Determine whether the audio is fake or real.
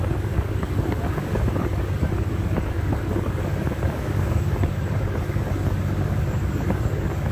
fake